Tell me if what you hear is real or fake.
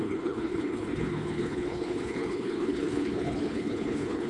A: fake